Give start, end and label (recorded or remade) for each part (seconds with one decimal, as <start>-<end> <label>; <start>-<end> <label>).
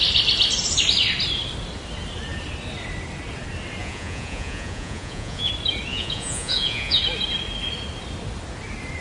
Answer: 0.0-3.8 recorded; 3.8-5.5 remade; 5.5-5.9 recorded; 5.9-7.0 remade; 7.0-9.0 recorded